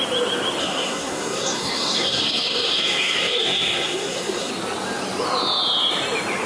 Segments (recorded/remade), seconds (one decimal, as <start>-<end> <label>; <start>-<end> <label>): 0.0-0.6 recorded; 0.6-4.5 remade; 4.5-6.5 recorded